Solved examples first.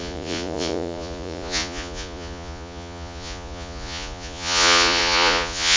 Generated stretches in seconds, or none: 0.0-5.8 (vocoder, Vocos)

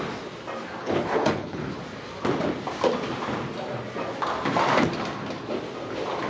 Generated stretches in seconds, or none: 0.8-1.7 (codec, HILCodec)

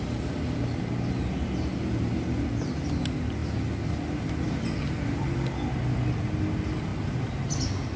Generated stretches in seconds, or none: none

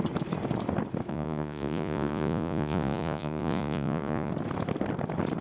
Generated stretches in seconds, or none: 1.1-4.3 (vocoder, Vocos)

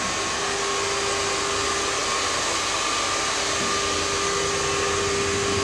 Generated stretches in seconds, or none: none